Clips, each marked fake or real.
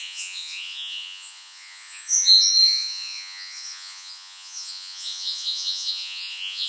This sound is fake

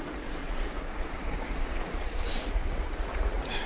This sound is fake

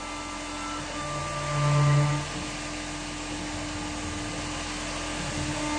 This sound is real